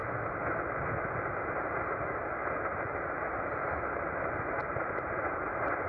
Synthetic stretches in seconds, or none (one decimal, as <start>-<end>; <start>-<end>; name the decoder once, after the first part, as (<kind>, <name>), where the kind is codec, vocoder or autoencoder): 4.6-5.4 (vocoder, BigVGAN v2)